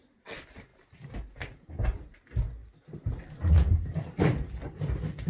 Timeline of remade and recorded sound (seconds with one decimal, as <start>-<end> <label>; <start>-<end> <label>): 0.0-5.3 recorded